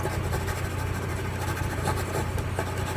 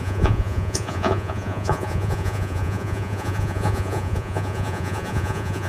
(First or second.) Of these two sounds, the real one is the first